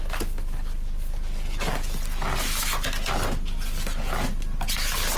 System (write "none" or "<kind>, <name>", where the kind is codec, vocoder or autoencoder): none